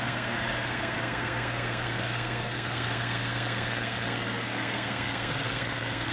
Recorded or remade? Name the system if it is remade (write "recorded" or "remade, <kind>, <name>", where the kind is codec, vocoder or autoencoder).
remade, codec, SNAC